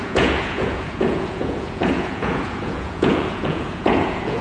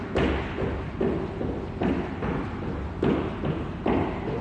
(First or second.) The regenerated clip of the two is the first